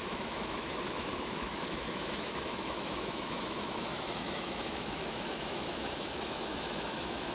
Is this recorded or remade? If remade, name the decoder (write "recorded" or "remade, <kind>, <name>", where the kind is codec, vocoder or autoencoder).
remade, autoencoder, DAC-VAE